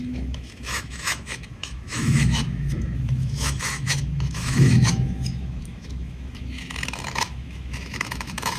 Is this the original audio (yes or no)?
no